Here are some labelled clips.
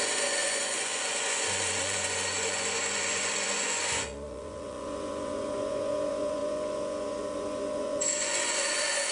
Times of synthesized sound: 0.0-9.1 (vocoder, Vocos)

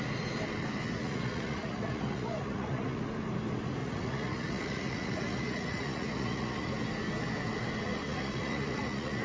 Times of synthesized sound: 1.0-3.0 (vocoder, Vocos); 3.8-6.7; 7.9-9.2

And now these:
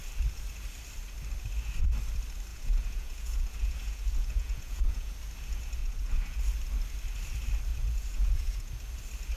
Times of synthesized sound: 2.5-5.1 (vocoder, Vocos); 5.8-6.4; 7.7-8.7

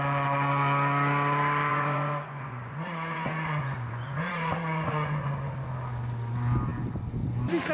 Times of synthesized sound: 1.7-5.3 (vocoder, Vocos)

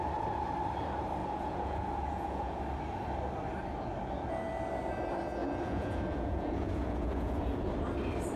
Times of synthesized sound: 1.2-2.6 (vocoder, Vocos); 5.4-7.7